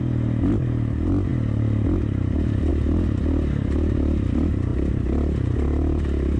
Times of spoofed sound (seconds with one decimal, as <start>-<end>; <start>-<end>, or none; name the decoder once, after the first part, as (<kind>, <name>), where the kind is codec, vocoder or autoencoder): none